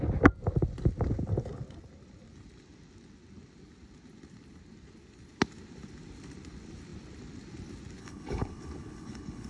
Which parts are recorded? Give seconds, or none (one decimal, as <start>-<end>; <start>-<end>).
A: 0.0-8.0